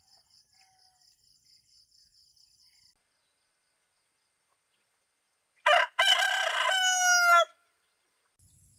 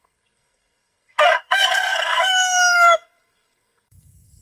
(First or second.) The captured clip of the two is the first